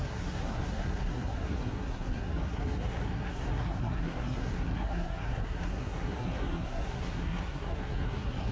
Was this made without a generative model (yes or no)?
no